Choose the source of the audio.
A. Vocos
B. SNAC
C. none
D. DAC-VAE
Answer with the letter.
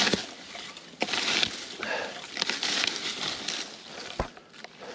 C